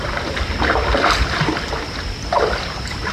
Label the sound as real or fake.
real